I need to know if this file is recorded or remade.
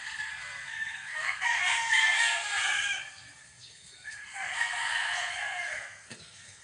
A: remade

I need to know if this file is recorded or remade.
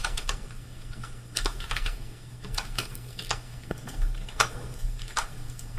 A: remade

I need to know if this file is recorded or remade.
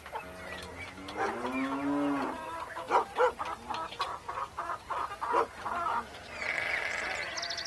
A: recorded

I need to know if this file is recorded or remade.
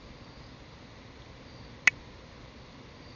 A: recorded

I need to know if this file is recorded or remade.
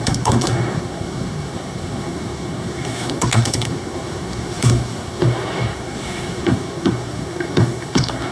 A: remade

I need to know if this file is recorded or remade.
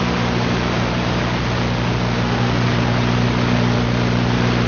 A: recorded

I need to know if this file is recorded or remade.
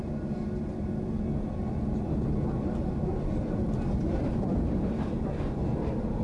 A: recorded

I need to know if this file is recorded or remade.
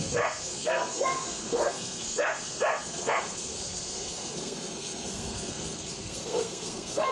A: remade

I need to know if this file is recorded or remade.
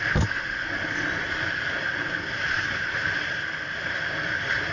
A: recorded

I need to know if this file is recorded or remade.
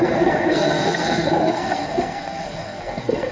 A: remade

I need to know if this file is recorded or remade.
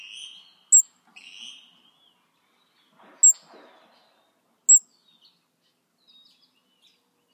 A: recorded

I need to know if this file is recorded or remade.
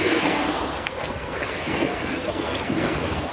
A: remade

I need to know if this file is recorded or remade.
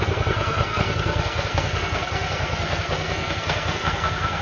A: remade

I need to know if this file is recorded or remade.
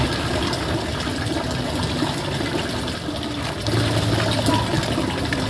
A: recorded